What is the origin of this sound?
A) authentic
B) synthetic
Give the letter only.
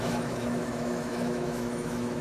B